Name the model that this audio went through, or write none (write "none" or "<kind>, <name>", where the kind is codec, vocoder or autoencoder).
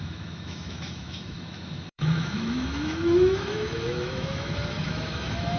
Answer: autoencoder, DAC-VAE